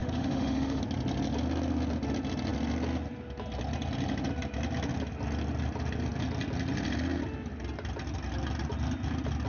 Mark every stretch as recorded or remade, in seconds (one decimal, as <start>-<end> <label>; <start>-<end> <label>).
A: 0.0-0.8 remade; 0.8-9.5 recorded